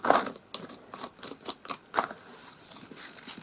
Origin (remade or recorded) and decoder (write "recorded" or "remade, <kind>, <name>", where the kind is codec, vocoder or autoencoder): recorded